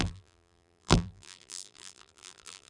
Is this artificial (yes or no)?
yes